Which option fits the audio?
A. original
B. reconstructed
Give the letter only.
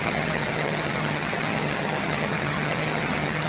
B